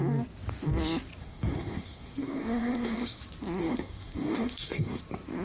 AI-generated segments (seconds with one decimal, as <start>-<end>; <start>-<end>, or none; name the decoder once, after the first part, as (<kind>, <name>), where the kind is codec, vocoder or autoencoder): 1.2-3.2 (codec, SNAC); 3.6-5.0